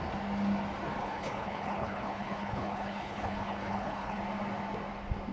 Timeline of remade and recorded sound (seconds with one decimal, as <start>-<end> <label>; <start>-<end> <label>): 0.0-1.0 recorded; 1.0-4.2 remade; 4.2-5.3 recorded

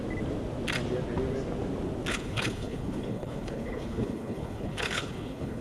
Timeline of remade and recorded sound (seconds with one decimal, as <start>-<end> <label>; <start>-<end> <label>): 0.0-2.1 recorded; 2.1-5.6 remade

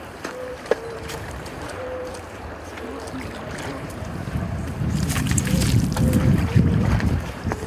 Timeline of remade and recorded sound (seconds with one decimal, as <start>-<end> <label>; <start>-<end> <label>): 0.0-2.7 remade; 2.7-3.7 recorded; 3.7-7.7 remade

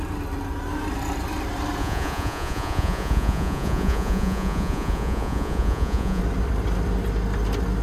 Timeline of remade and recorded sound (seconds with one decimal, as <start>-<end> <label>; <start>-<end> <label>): 0.0-1.8 recorded; 1.8-6.2 remade; 6.2-7.8 recorded

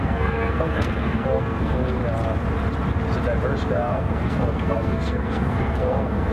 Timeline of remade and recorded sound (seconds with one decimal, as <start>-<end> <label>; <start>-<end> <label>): 0.0-2.0 remade; 2.0-3.7 recorded; 3.7-6.3 remade

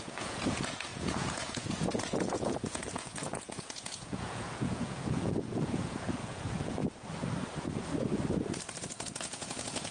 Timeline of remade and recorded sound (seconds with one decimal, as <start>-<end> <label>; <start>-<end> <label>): 0.0-6.8 remade; 6.8-8.8 recorded; 8.8-9.9 remade

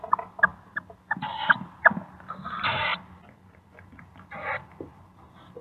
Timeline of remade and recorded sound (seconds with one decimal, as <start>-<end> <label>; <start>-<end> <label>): 0.0-0.5 recorded; 0.5-2.0 remade; 2.0-5.6 recorded